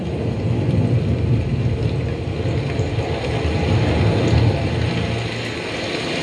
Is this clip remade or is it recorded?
recorded